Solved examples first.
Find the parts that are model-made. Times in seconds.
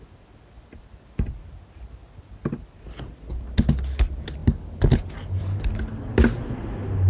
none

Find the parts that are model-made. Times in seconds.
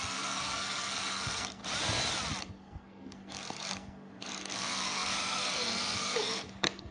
0.0-1.6 (codec, SNAC); 2.4-6.9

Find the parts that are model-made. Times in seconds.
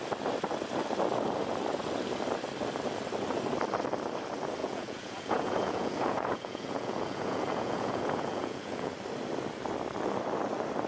4.6-8.9 (vocoder, Vocos)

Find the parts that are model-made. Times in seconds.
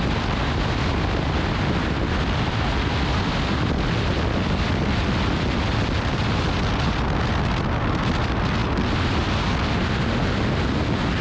none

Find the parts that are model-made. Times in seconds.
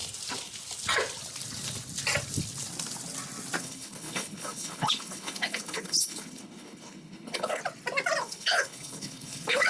3.6-7.6 (codec, HILCodec); 8.2-9.7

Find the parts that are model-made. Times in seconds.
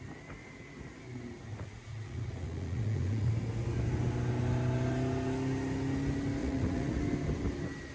1.5-3.3 (vocoder, Vocos); 6.4-7.0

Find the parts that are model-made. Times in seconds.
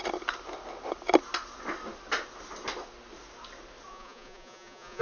3.9-5.0 (vocoder, Vocos)